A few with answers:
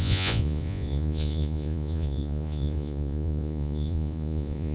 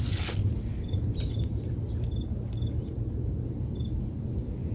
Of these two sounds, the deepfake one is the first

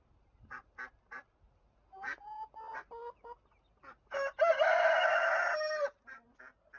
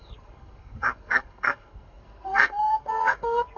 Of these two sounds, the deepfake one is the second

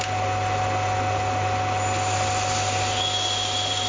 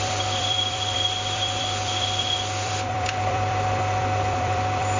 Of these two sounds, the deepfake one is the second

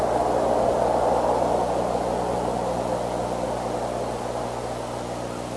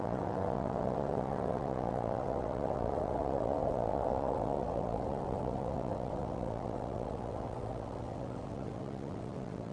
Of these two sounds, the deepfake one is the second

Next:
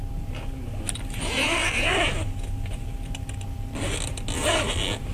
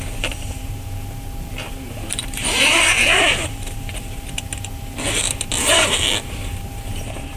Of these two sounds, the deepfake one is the second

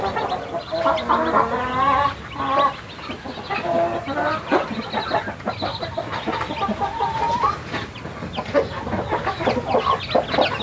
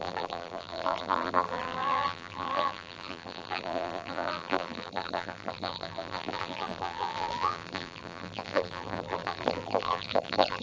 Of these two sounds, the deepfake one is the second